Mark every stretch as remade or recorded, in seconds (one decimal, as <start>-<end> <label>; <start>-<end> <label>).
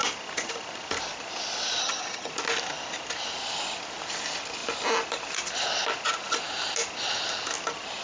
0.0-1.8 recorded; 1.8-2.3 remade; 2.3-8.0 recorded